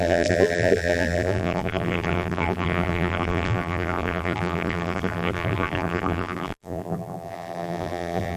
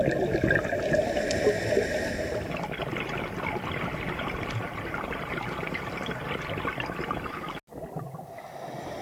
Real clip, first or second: second